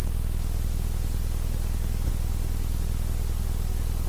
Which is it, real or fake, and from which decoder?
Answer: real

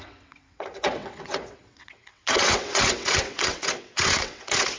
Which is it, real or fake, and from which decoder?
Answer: fake, vocoder, WaveNeXt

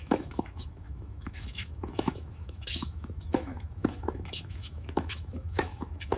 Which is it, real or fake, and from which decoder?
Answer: fake, autoencoder, DAC-VAE